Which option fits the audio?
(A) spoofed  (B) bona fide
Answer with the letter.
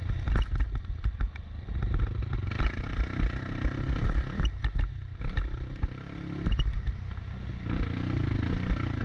B